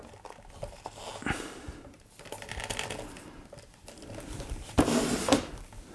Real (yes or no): yes